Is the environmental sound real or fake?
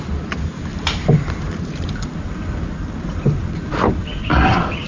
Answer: real